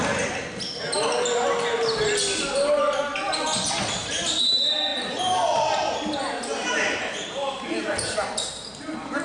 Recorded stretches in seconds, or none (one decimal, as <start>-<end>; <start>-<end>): 0.0-9.2

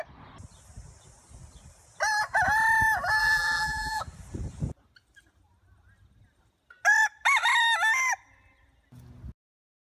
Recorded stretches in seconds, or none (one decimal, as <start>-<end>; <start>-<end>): 0.0-3.2; 4.0-9.9

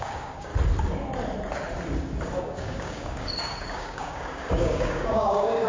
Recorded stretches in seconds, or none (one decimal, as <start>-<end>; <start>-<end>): 0.5-2.4

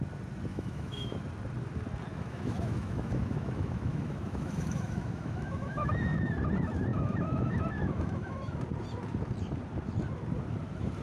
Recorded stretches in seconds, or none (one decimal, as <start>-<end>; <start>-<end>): 0.0-0.5; 1.2-2.1; 6.3-6.9; 8.6-11.0

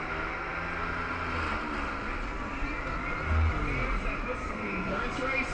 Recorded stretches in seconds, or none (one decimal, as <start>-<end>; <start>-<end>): 0.0-4.4; 5.0-5.5

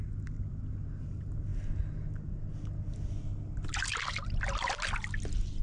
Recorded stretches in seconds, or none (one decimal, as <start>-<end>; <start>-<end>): 0.0-5.6